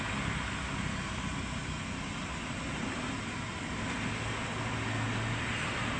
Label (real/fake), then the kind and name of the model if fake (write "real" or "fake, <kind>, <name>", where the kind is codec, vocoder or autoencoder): real